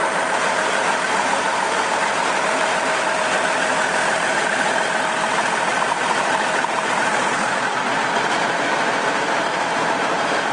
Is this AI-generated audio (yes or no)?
yes